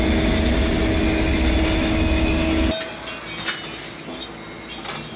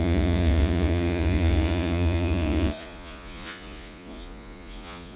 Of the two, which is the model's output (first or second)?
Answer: second